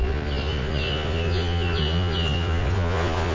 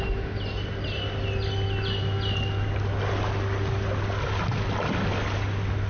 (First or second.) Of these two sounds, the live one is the second